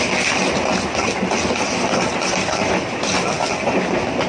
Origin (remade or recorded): recorded